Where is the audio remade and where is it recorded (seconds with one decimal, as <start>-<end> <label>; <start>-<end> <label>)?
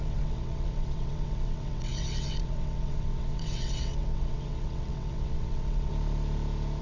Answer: 0.0-5.9 remade; 5.9-6.8 recorded